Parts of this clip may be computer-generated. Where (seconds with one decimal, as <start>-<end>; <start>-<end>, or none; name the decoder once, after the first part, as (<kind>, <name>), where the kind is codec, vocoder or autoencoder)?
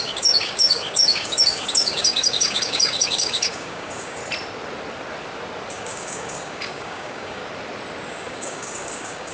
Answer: 0.0-4.2 (codec, DAC); 5.7-7.4; 8.1-9.3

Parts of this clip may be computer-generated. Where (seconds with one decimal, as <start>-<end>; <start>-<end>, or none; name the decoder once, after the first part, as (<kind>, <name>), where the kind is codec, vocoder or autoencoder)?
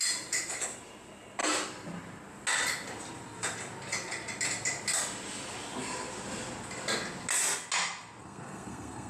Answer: 8.2-9.1 (codec, SNAC)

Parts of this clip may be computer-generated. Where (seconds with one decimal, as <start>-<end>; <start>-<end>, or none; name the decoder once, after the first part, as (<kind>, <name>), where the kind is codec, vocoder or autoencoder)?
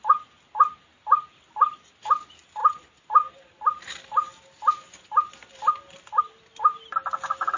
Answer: none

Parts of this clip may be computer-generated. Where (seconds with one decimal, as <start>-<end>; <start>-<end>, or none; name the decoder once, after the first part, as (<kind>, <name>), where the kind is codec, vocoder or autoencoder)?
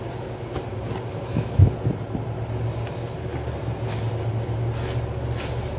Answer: 1.1-1.7 (autoencoder, DAC-VAE)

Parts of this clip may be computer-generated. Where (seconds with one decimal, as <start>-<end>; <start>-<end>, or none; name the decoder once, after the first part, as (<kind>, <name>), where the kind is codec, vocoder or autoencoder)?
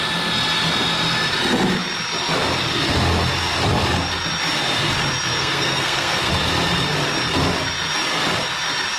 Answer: 5.4-6.3 (codec, SNAC)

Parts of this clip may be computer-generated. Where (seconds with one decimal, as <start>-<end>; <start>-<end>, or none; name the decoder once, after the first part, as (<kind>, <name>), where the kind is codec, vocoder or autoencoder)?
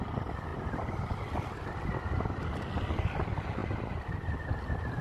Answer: none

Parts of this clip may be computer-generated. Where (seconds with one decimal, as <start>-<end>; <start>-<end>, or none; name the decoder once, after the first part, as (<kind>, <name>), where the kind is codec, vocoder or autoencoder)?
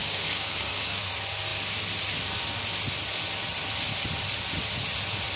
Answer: 0.0-1.1 (codec, DAC)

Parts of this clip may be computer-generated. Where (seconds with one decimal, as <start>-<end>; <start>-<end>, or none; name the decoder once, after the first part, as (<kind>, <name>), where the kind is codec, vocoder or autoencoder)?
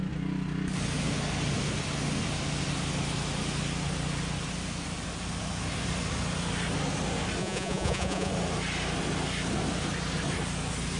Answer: 7.4-8.3 (vocoder, Vocos)